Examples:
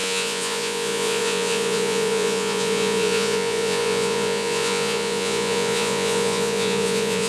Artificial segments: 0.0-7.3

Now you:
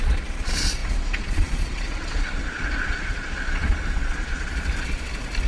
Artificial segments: 0.0-4.5

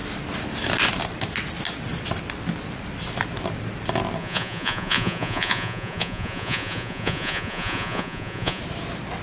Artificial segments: 4.2-8.6

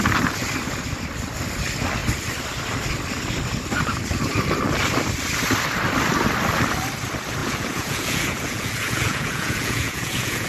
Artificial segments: 7.4-10.5

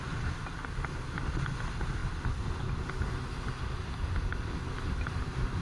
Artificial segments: none